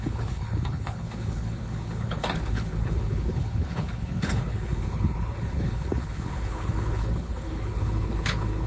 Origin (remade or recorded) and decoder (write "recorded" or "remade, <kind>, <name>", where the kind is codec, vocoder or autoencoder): remade, codec, HILCodec